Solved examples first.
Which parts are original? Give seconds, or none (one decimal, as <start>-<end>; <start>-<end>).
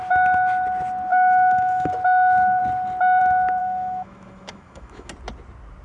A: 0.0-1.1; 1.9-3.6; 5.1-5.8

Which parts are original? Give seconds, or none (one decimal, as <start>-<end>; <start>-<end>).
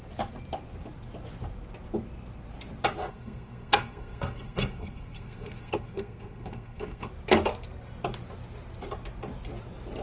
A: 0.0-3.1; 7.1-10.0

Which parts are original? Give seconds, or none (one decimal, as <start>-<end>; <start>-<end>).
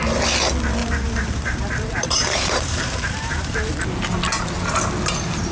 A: 0.0-0.8; 3.7-5.5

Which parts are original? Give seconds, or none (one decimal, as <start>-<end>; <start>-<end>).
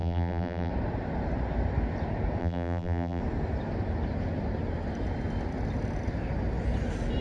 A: 0.7-2.4; 3.2-7.2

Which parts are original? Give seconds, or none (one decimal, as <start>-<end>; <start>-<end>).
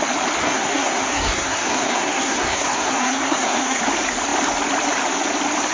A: 0.0-0.4; 3.8-5.7